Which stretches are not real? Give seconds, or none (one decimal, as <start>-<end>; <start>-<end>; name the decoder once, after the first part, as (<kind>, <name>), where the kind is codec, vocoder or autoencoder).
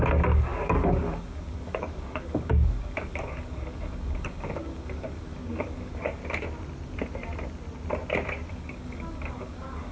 0.0-6.2 (codec, DAC); 8.5-9.9